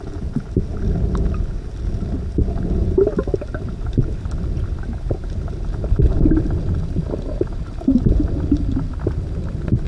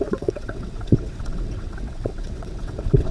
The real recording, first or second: first